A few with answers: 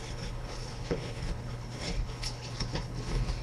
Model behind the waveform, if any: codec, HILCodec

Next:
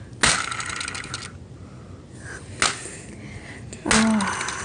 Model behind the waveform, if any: none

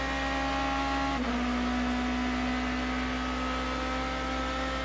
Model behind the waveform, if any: none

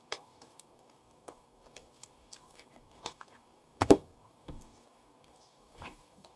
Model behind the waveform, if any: codec, DAC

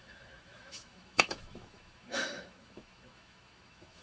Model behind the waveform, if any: autoencoder, DAC-VAE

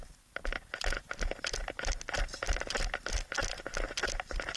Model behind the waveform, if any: none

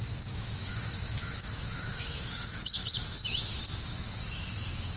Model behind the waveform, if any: autoencoder, DAC-VAE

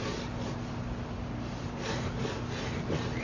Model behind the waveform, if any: none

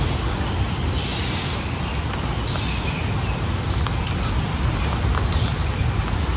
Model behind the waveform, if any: none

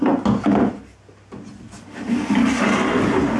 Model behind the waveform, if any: none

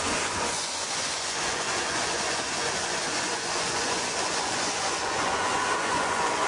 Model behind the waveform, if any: vocoder, Vocos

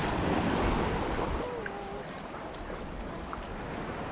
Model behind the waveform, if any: none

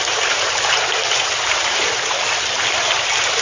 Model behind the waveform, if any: none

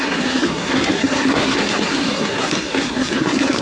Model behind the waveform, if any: codec, SNAC